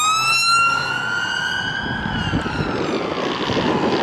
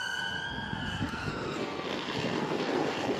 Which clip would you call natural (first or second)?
first